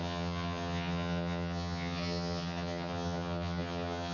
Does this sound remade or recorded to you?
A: remade